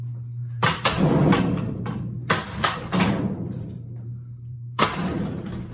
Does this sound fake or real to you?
fake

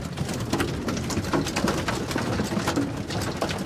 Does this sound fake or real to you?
real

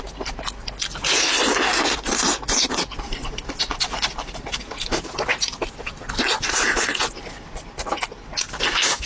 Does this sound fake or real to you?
real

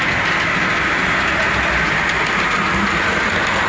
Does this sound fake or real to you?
real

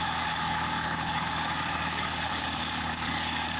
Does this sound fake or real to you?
fake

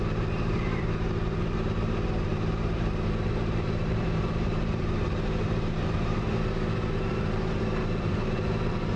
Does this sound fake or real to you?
fake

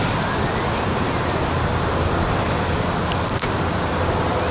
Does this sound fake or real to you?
real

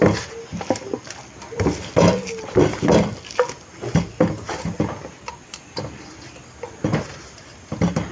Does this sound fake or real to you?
real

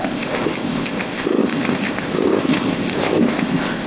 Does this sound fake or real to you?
fake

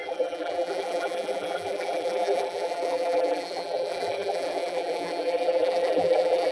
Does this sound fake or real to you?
fake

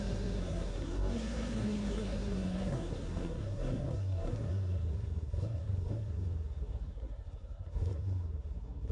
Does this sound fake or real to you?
fake